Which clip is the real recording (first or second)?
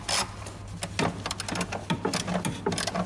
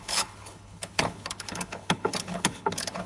first